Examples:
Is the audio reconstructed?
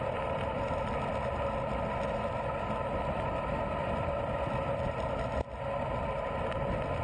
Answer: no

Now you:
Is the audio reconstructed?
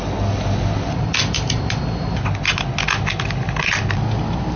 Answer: no